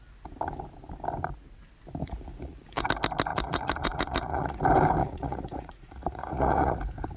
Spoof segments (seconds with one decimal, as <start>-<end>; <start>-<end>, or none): 2.0-2.9; 3.3-4.6; 5.0-6.8